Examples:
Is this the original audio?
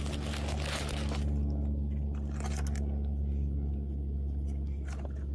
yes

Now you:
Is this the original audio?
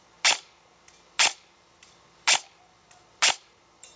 no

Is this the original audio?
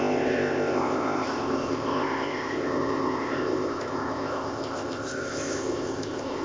no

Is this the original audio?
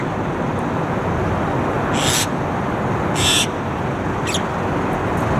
yes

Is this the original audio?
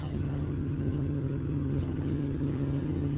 no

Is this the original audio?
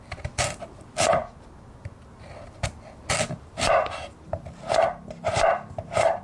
yes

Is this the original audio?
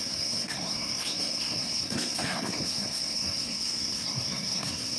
no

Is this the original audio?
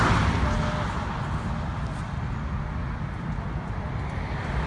yes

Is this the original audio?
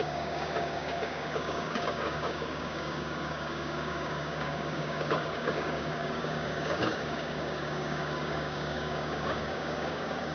no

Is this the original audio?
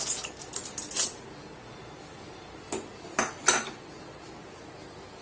yes